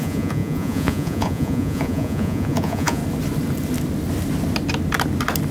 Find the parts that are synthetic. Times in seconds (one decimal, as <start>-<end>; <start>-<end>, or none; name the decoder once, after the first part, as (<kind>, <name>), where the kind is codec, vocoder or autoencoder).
0.0-3.0 (vocoder, Vocos)